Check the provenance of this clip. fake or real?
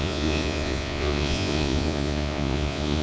fake